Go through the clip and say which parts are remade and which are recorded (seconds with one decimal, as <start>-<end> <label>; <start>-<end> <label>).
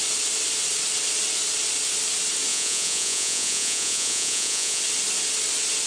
0.0-2.5 recorded; 2.5-4.8 remade; 4.8-5.9 recorded